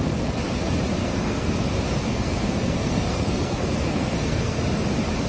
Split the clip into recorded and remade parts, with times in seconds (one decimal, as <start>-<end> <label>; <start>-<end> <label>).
0.0-1.0 recorded; 1.0-1.5 remade; 1.5-2.1 recorded; 2.1-4.6 remade; 4.6-5.3 recorded